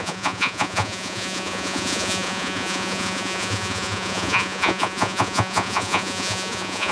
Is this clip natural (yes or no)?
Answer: no